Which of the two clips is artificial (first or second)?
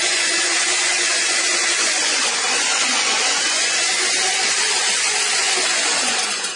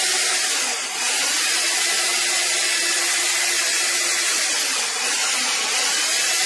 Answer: first